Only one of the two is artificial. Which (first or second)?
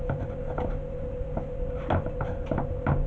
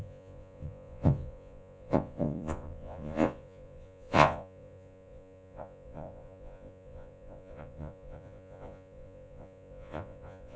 second